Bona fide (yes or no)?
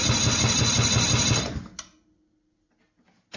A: yes